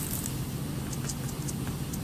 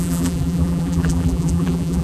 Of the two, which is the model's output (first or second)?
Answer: second